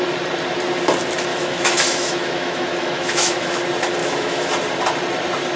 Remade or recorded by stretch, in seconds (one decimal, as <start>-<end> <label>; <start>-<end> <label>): 0.0-1.3 recorded; 1.3-3.6 remade; 3.6-4.0 recorded; 4.0-4.5 remade; 4.5-5.6 recorded